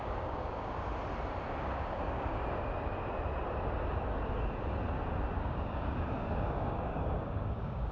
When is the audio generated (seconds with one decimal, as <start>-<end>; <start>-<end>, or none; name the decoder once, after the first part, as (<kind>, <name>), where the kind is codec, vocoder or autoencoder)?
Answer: 0.0-0.9 (codec, DAC); 1.5-2.4; 5.4-7.9